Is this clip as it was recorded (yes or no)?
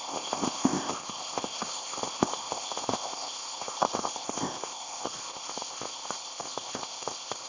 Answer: no